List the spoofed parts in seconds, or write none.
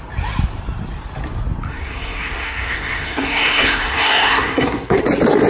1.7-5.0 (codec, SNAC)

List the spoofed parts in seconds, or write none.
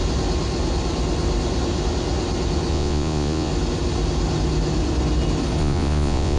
2.7-3.5 (vocoder, Vocos); 5.6-6.4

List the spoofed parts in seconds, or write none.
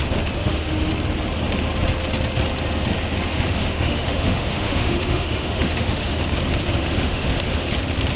0.4-0.9 (autoencoder, DAC-VAE); 3.3-6.2; 6.8-7.7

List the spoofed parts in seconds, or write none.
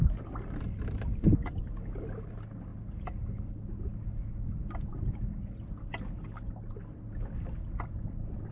none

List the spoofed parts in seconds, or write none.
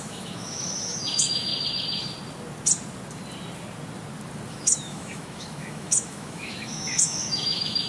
0.0-1.5 (autoencoder, DAC-VAE); 4.5-7.9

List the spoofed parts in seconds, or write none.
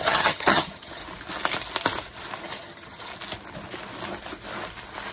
0.0-1.0 (vocoder, HiFi-GAN); 2.4-3.1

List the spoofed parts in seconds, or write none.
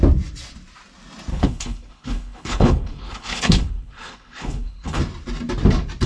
1.3-5.0 (codec, HILCodec)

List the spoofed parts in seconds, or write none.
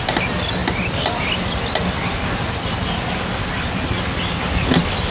none